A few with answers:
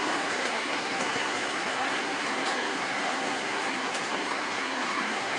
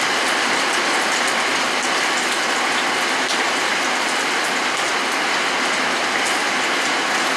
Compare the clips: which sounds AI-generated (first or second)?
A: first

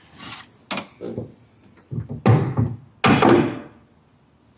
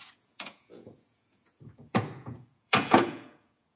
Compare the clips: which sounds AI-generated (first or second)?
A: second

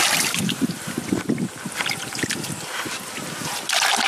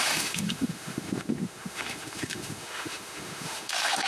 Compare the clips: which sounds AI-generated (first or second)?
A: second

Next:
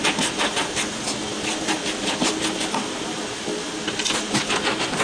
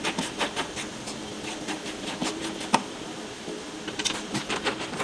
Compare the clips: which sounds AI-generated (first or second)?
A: second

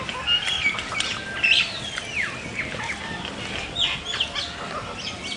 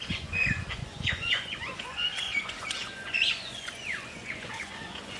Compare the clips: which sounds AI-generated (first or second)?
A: second